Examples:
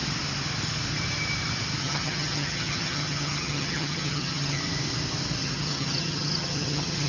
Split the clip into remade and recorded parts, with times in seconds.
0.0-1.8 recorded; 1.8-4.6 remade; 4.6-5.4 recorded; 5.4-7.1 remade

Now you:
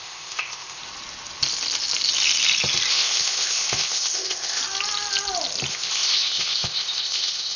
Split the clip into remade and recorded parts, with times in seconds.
0.0-0.8 remade; 0.8-2.9 recorded; 2.9-4.6 remade; 4.6-5.7 recorded; 5.7-7.6 remade